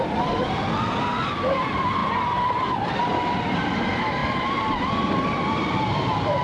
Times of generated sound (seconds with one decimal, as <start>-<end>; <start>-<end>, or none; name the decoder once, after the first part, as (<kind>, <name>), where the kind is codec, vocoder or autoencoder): 2.0-3.0 (vocoder, BigVGAN v2); 4.2-6.4